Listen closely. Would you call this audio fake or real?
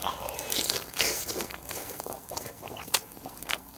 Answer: fake